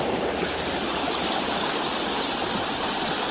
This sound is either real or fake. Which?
real